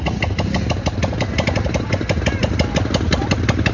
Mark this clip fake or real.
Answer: real